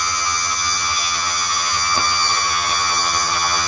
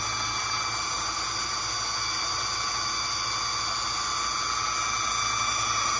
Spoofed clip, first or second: first